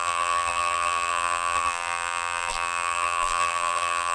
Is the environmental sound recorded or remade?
remade